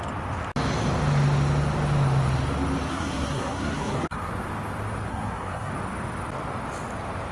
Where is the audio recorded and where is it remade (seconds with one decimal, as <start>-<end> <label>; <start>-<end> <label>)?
0.0-2.9 recorded; 2.9-4.3 remade; 4.3-5.1 recorded; 5.1-5.7 remade; 5.7-7.3 recorded